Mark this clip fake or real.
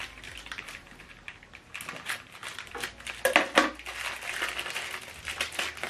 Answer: real